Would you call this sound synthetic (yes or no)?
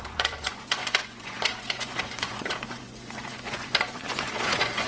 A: yes